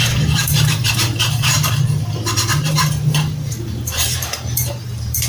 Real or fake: fake